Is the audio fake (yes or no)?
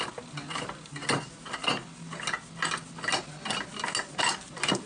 no